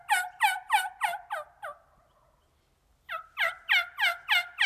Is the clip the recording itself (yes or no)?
yes